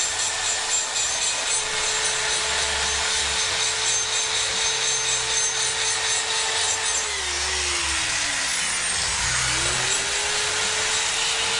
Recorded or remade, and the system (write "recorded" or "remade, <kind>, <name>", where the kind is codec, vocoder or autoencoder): recorded